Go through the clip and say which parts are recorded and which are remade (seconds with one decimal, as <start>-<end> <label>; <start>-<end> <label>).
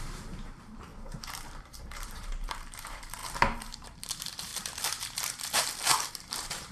0.0-4.5 remade; 4.5-6.1 recorded; 6.1-6.7 remade